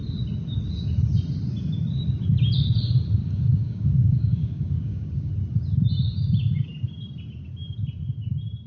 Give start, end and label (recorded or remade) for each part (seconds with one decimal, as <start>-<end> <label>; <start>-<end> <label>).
0.0-3.2 recorded; 3.2-5.3 remade; 5.3-8.7 recorded